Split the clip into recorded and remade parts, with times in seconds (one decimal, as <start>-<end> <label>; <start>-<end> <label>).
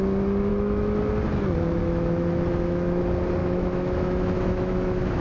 0.0-0.5 recorded; 0.5-1.0 remade; 1.0-1.8 recorded; 1.8-3.0 remade; 3.0-3.4 recorded; 3.4-5.2 remade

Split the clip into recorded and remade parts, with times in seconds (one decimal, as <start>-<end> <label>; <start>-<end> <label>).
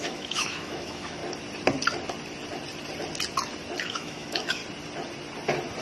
0.0-1.2 remade; 1.2-3.8 recorded; 3.8-4.6 remade; 4.6-5.8 recorded